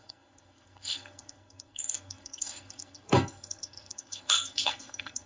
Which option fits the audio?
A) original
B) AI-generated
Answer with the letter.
B